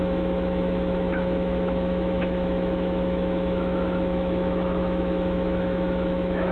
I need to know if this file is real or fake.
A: fake